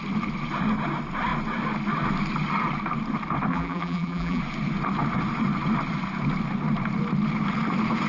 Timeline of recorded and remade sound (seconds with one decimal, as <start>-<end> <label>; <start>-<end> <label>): 0.0-3.5 recorded; 3.5-4.4 remade; 4.4-8.1 recorded